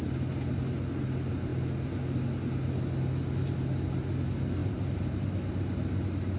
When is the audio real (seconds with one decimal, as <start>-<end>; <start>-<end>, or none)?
0.0-4.6; 5.3-6.4